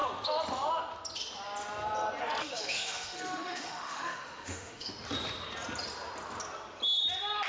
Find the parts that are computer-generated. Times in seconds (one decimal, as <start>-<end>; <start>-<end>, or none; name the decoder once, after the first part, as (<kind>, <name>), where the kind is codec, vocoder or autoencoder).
2.4-4.9 (autoencoder, DAC-VAE)